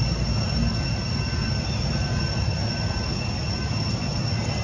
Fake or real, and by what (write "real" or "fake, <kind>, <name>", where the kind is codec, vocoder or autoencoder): real